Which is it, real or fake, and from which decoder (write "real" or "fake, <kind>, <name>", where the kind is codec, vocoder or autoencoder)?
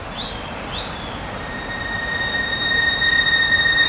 real